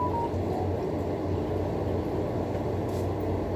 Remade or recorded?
recorded